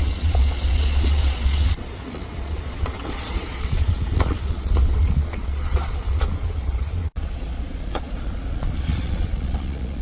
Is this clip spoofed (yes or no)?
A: yes